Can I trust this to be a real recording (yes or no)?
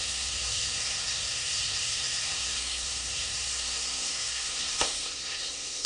no